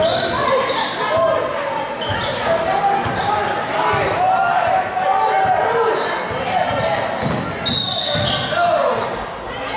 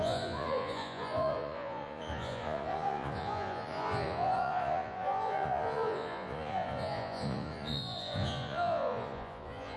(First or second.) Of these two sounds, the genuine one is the first